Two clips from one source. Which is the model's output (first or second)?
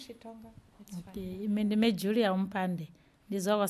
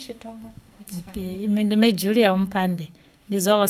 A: second